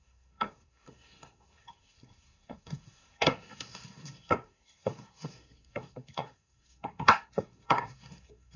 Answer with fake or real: fake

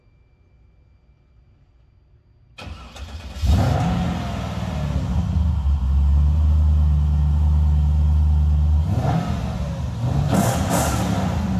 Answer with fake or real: real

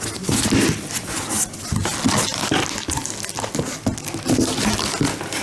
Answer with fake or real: real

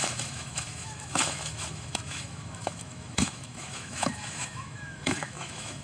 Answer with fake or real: fake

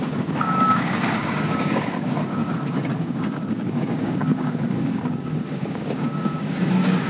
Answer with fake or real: fake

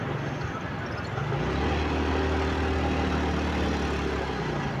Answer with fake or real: real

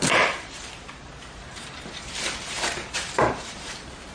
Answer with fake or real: fake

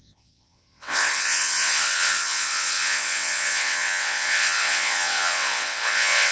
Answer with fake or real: fake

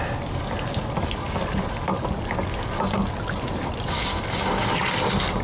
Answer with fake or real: real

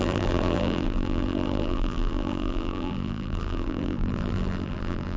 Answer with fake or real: fake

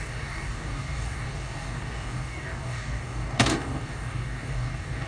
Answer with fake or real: fake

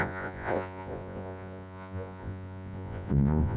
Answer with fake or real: fake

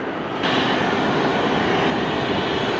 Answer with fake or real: real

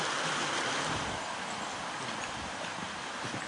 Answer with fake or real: real